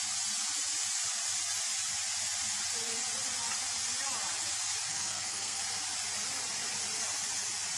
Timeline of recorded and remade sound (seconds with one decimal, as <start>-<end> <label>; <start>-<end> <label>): 0.0-4.9 recorded; 4.9-5.6 remade; 5.6-7.8 recorded